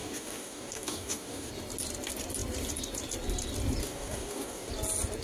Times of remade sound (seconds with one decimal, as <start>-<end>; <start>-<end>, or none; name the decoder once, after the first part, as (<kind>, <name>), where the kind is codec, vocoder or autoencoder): 0.0-1.5 (codec, DAC); 3.8-4.7

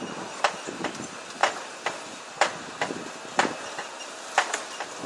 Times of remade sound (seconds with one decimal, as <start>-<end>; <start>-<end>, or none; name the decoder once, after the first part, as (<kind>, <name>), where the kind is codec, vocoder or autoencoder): none

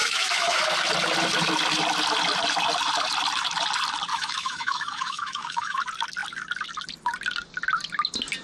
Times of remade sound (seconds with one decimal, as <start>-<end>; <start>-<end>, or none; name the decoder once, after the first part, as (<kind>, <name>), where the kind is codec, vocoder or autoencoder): 0.0-0.6 (autoencoder, DAC-VAE); 4.1-5.8

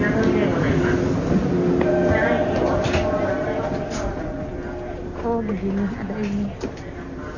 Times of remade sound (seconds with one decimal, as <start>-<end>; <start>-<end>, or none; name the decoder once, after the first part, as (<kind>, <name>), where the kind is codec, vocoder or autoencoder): none

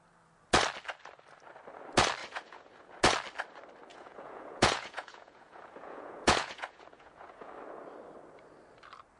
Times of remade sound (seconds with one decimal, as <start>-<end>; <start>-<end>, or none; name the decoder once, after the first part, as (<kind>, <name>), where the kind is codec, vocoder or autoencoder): 2.2-3.0 (vocoder, Vocos); 3.9-7.5

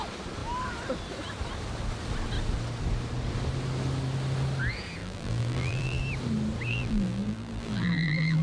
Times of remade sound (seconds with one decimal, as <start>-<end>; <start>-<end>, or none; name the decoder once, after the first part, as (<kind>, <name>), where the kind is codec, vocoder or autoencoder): 5.0-6.0 (vocoder, BigVGAN v2); 6.7-8.4

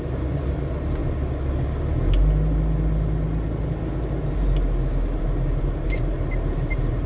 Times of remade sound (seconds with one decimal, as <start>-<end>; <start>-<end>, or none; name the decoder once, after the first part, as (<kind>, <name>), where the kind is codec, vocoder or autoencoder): 0.0-1.0 (vocoder, BigVGAN v2); 5.2-7.1

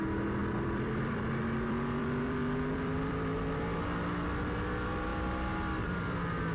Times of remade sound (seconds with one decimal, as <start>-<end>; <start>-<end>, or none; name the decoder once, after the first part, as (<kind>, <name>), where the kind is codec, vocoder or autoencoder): 0.4-3.4 (vocoder, BigVGAN v2); 5.1-6.5